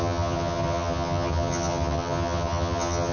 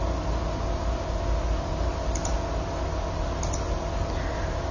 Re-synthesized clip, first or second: first